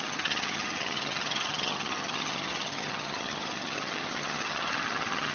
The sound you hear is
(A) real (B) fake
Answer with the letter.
B